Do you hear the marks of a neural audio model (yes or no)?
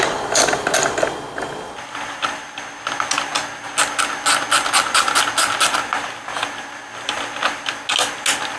no